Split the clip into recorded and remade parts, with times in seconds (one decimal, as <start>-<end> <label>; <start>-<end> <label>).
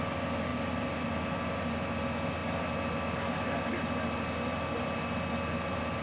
0.0-6.0 recorded